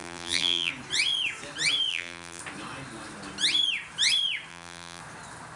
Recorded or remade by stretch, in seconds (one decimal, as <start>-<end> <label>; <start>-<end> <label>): 0.0-0.7 remade; 0.7-1.9 recorded; 1.9-2.4 remade; 2.4-4.5 recorded; 4.5-5.0 remade; 5.0-5.6 recorded